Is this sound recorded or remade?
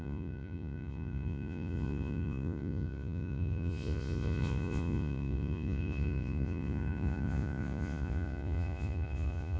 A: remade